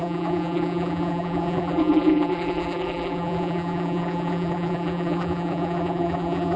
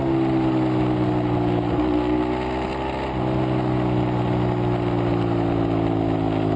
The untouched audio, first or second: second